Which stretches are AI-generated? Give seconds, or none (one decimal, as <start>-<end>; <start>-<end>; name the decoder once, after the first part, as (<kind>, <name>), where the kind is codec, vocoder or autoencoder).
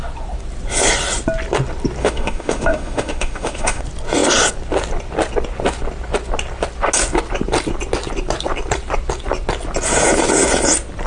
2.0-3.8 (autoencoder, DAC-VAE)